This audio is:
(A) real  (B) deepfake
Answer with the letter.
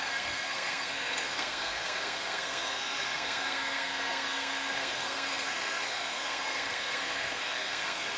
B